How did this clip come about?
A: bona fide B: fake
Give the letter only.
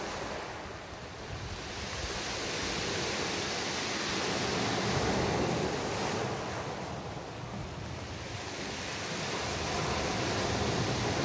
A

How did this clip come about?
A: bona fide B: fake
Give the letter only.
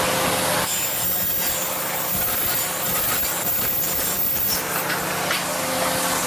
A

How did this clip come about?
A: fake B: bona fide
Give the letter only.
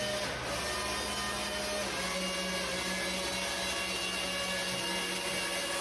B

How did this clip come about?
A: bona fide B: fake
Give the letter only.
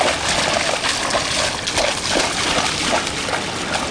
A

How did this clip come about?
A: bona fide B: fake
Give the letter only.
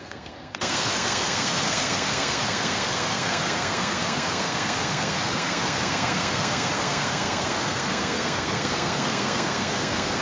B